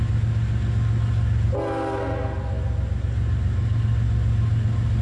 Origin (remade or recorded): recorded